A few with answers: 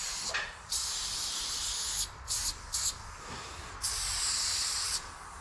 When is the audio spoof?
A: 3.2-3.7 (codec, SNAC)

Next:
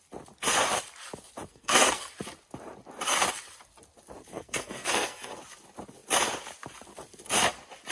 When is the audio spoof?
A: 1.5-2.1 (codec, SNAC); 4.3-5.4

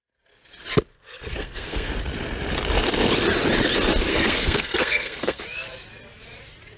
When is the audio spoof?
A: 0.9-1.9 (codec, SNAC); 4.1-5.4

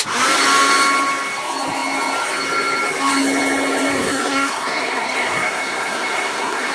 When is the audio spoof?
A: 3.9-6.7 (codec, SNAC)